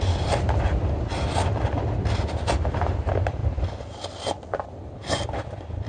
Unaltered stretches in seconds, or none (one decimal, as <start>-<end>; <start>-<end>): 0.0-5.9